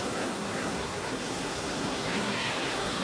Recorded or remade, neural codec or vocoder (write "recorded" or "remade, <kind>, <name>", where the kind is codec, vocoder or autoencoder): remade, codec, SNAC